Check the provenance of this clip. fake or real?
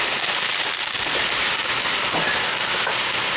real